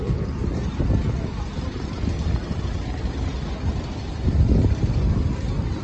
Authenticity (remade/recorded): recorded